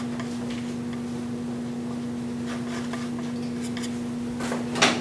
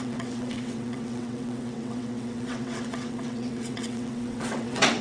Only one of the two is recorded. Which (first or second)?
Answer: first